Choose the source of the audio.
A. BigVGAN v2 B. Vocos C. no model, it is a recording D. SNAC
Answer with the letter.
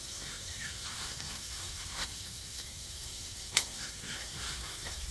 D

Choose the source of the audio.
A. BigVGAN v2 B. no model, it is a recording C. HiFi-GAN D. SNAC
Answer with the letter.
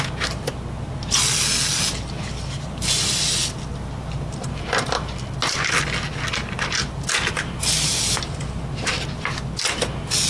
B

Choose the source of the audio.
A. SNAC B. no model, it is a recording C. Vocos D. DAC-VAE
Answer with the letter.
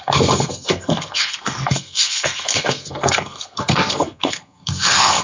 A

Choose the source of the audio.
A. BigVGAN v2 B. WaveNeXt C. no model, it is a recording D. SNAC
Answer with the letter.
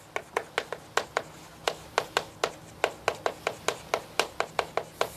C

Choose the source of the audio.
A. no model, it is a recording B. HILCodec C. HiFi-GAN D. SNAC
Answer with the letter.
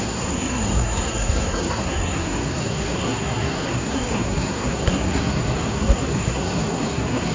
D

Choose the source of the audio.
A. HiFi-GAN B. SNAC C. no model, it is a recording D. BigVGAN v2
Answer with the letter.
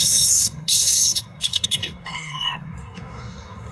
B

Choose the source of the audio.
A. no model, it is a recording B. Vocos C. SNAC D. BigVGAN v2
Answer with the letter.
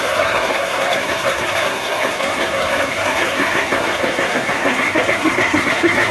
C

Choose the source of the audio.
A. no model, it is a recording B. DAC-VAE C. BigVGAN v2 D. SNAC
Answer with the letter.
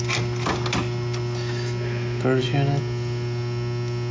A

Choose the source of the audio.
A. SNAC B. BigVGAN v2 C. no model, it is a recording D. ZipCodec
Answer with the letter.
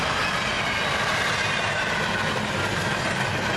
C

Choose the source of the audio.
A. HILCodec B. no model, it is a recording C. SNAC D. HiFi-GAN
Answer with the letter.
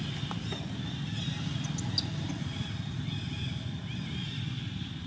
B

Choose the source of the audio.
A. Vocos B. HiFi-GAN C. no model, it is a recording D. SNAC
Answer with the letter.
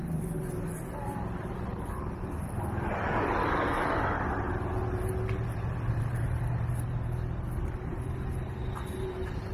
C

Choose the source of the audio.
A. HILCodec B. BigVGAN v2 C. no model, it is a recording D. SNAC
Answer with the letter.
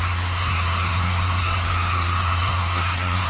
D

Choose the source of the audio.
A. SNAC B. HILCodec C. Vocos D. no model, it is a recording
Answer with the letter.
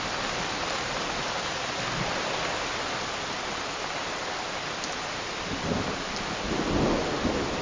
D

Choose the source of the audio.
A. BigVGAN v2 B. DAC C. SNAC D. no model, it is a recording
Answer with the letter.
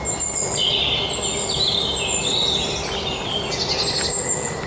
D